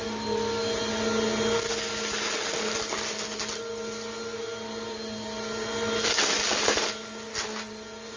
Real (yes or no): yes